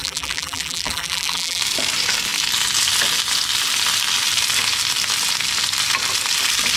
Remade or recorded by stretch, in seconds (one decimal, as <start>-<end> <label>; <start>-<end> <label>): 0.0-1.6 remade; 1.6-6.8 recorded